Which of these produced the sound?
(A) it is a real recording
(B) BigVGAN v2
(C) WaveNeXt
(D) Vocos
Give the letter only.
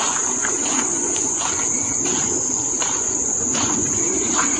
D